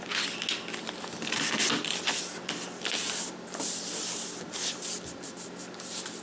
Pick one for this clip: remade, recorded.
recorded